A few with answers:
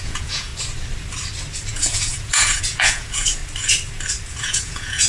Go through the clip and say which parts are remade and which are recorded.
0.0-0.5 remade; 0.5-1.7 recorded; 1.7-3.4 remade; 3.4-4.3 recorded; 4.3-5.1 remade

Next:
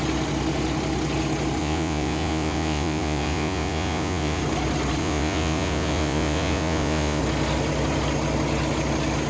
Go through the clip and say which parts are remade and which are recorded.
0.0-1.6 recorded; 1.6-4.4 remade; 4.4-5.0 recorded; 5.0-7.2 remade; 7.2-9.3 recorded

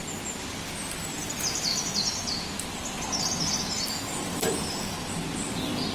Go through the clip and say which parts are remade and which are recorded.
0.0-5.9 recorded